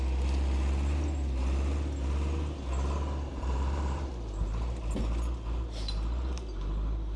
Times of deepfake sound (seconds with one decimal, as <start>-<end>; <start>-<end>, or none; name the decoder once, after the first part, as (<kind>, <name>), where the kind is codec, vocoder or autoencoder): 3.3-4.1 (vocoder, BigVGAN v2)